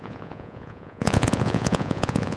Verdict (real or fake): fake